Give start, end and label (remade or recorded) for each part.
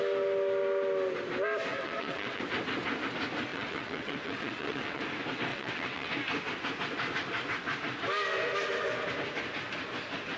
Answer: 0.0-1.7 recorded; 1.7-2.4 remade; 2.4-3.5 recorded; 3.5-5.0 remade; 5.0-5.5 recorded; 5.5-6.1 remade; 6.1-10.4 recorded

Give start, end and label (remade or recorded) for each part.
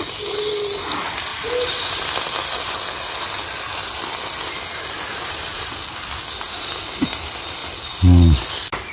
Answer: 0.0-1.3 recorded; 1.3-1.9 remade; 1.9-5.1 recorded; 5.1-5.7 remade; 5.7-8.9 recorded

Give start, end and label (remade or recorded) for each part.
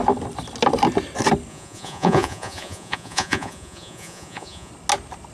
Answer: 0.0-1.5 recorded; 1.5-4.7 remade; 4.7-5.3 recorded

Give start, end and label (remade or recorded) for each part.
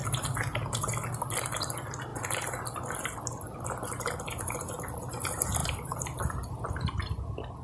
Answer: 0.0-7.6 recorded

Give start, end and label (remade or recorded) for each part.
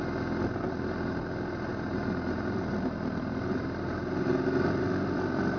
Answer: 0.0-5.6 recorded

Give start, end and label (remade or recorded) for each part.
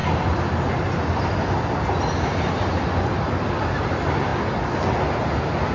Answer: 0.0-5.7 recorded